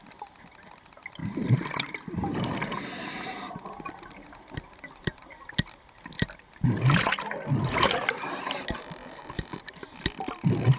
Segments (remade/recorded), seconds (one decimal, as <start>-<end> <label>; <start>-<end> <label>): 0.0-9.0 recorded; 9.0-9.6 remade; 9.6-10.8 recorded